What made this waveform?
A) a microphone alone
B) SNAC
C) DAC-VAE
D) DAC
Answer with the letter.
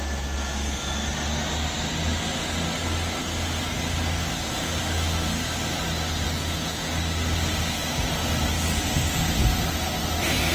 A